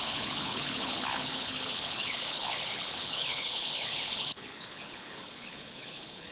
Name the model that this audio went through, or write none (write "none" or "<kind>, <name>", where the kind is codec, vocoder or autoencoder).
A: codec, HILCodec